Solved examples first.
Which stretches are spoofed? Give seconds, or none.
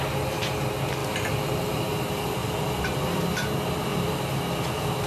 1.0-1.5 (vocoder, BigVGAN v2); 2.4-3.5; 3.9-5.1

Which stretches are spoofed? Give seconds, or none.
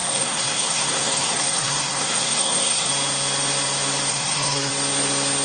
0.0-2.9 (codec, SNAC); 4.1-4.7